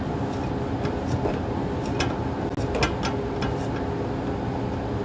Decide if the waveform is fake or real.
real